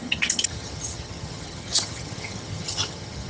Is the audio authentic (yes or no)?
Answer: no